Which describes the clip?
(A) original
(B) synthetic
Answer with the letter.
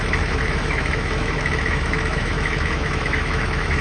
B